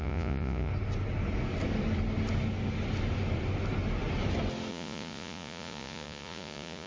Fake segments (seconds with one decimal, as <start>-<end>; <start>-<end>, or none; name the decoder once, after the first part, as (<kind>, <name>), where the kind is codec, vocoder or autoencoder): 0.0-0.7 (vocoder, Vocos); 4.7-6.9